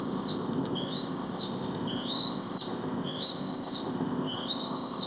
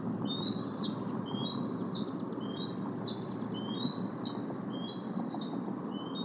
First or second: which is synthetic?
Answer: first